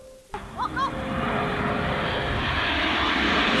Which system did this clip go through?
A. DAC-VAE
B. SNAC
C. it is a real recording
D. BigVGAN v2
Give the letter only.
C